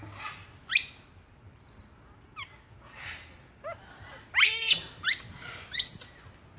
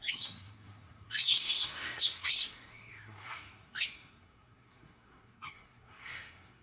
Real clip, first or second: first